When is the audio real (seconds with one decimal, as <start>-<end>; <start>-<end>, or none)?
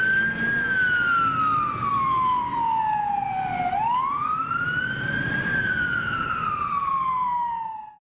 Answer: 0.0-1.9; 2.8-3.3